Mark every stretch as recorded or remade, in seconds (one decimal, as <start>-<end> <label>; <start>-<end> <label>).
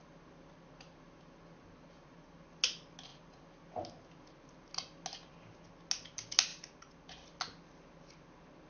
0.0-8.7 recorded